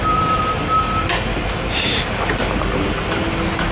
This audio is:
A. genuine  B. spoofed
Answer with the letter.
A